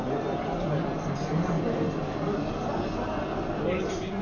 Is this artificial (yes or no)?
no